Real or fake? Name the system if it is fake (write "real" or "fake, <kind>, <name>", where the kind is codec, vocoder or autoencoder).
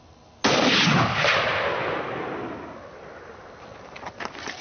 real